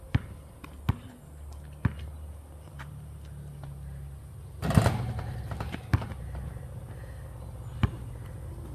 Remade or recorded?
recorded